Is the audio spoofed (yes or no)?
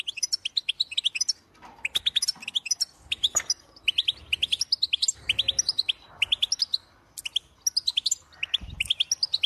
no